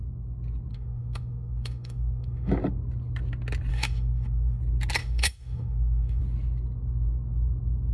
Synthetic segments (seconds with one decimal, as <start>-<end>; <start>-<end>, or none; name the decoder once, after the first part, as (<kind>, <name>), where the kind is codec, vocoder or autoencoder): 0.7-2.5 (autoencoder, DAC-VAE); 3.7-4.6; 5.0-6.2